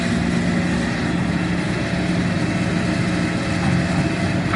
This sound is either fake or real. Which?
real